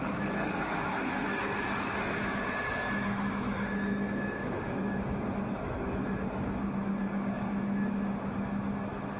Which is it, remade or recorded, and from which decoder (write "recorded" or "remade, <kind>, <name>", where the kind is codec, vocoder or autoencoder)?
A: remade, autoencoder, DAC-VAE